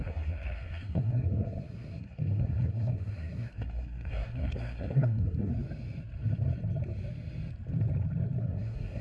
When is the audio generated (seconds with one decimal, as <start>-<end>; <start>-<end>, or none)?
0.0-5.5; 8.4-9.0